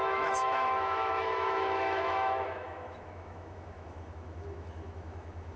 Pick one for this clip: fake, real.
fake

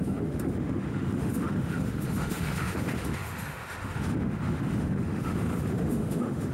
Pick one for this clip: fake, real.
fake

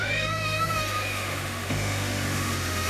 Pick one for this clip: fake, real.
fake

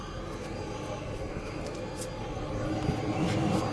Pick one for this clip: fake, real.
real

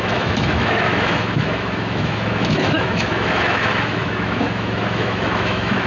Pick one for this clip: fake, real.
fake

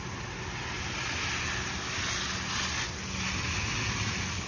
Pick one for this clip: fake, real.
real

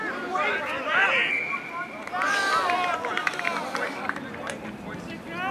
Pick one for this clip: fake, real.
real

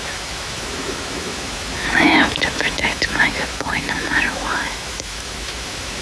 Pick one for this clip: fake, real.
fake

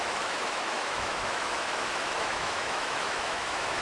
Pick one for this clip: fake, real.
fake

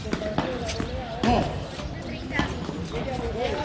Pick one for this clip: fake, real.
real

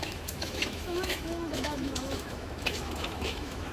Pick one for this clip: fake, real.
fake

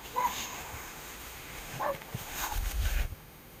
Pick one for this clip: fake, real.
fake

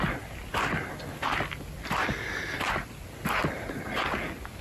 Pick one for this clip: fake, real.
real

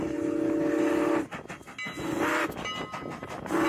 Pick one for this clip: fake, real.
real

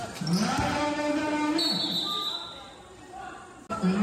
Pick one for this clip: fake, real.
real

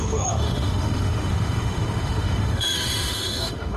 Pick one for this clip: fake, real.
fake